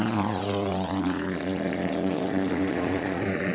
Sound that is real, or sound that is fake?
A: fake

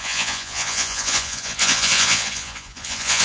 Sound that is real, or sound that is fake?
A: fake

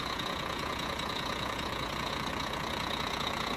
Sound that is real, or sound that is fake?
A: fake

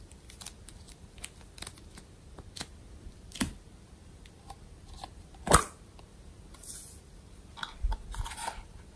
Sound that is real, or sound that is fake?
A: real